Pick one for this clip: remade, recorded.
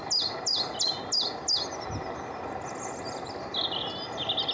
recorded